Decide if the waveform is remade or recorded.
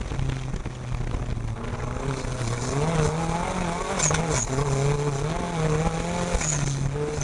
recorded